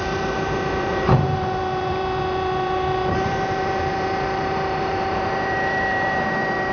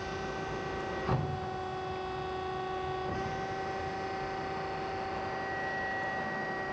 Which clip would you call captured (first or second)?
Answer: second